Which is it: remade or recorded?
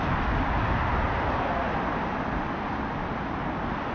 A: recorded